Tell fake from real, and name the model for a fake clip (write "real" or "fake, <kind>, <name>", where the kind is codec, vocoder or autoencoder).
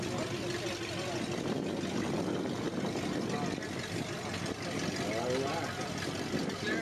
real